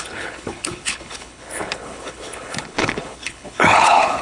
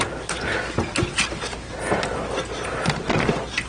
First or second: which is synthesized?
first